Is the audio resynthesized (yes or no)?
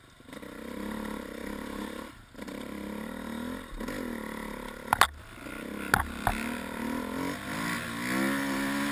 no